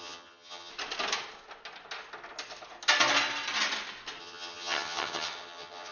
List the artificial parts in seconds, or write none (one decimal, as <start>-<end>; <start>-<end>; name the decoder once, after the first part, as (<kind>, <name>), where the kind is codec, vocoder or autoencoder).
0.0-0.7 (vocoder, HiFi-GAN); 4.2-5.9